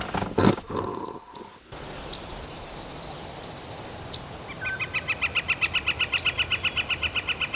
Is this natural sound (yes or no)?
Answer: yes